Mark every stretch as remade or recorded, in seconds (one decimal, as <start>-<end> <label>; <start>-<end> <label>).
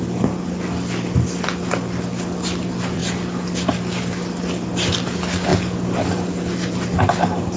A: 0.0-7.6 recorded